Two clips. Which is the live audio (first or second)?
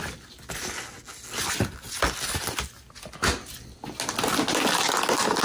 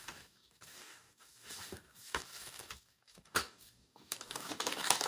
first